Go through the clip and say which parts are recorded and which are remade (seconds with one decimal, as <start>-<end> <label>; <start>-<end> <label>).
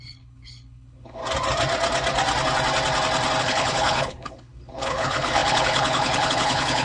0.0-1.2 remade; 1.2-3.4 recorded; 3.4-6.8 remade